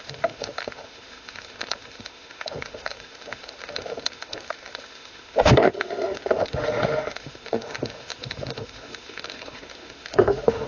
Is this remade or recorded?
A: remade